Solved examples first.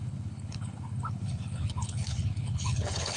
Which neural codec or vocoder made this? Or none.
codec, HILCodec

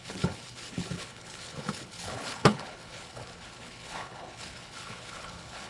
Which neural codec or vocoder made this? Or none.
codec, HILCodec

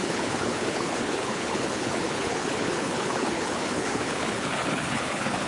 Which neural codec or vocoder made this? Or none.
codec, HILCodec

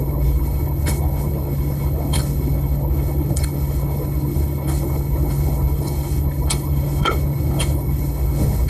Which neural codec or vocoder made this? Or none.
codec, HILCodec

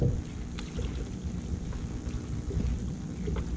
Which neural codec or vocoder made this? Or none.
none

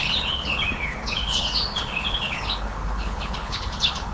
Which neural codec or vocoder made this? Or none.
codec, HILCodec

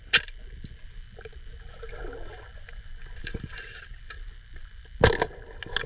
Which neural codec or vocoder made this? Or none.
none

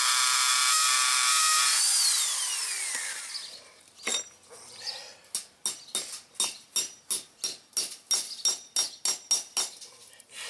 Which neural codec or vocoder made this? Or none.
none